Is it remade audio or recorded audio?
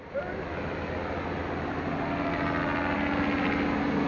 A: recorded